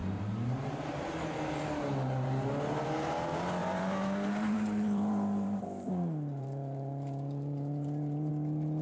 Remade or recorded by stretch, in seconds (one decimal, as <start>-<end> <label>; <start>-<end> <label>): 0.0-1.1 remade; 1.1-3.6 recorded; 3.6-8.3 remade; 8.3-8.8 recorded